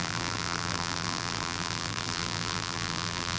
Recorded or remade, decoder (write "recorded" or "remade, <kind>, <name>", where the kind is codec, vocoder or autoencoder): remade, vocoder, BigVGAN v2